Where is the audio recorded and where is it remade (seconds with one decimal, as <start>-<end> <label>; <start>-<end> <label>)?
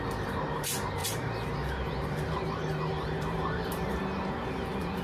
0.0-1.0 recorded; 1.0-4.0 remade; 4.0-5.0 recorded